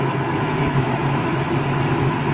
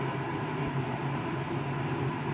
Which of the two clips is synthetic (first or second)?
first